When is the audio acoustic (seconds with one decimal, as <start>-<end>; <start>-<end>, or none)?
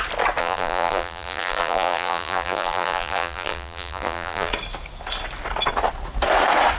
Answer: 0.0-0.4; 4.5-6.8